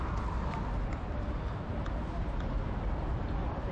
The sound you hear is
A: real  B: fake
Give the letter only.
A